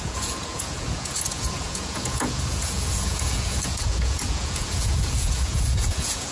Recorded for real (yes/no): no